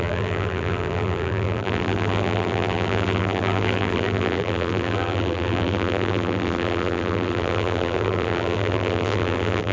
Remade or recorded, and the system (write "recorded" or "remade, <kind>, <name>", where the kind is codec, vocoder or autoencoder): remade, vocoder, BigVGAN v2